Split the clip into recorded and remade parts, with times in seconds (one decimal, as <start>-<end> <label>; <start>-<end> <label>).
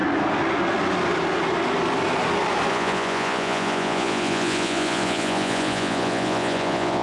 0.0-2.7 recorded; 2.7-7.0 remade